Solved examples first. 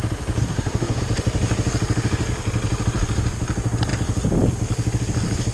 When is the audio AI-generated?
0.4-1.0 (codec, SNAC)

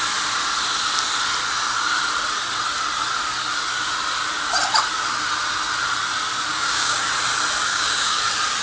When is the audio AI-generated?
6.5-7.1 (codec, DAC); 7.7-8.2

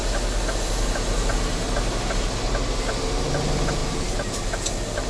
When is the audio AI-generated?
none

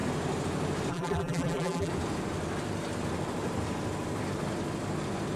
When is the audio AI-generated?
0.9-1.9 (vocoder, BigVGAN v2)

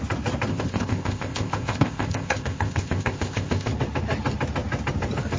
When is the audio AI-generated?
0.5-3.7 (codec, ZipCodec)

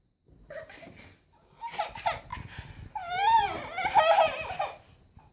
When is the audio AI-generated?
none

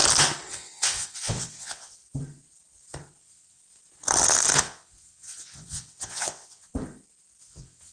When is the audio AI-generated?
0.5-2.0 (vocoder, WaveNeXt); 3.2-3.6; 4.6-6.7; 7.4-7.9

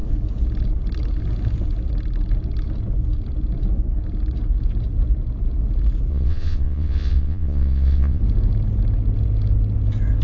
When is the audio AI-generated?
6.1-8.2 (vocoder, Vocos)